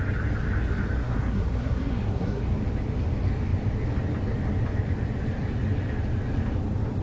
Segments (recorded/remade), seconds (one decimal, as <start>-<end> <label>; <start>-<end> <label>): 0.0-1.0 recorded; 1.0-2.4 remade; 2.4-7.0 recorded